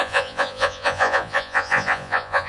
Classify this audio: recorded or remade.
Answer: remade